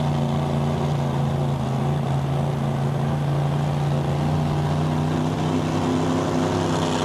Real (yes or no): yes